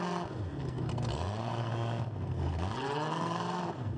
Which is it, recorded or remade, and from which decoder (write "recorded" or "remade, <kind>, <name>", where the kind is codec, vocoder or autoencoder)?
remade, codec, SNAC